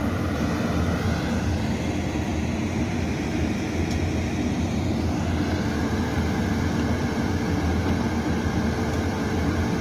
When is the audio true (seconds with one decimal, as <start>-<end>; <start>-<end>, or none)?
0.0-9.8